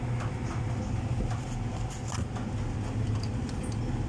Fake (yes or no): no